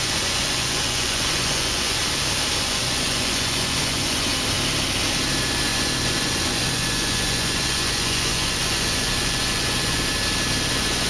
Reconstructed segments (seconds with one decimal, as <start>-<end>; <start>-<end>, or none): 0.0-2.0; 2.6-4.3; 5.4-10.1; 10.7-11.1